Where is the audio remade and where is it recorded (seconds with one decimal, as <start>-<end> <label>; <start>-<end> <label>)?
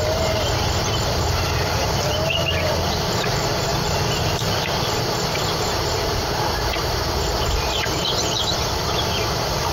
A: 0.0-1.8 remade; 1.8-2.7 recorded; 2.7-9.7 remade